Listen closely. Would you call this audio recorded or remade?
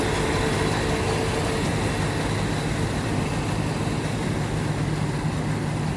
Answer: recorded